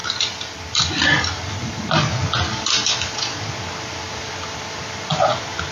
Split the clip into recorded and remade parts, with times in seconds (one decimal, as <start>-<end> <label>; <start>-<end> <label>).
0.0-5.7 recorded